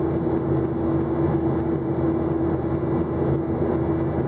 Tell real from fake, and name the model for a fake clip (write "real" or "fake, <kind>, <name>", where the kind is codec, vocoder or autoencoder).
real